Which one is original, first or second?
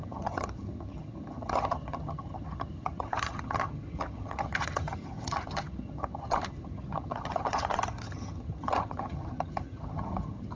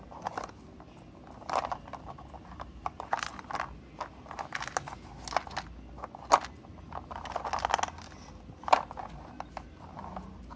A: second